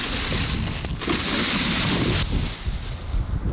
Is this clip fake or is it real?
real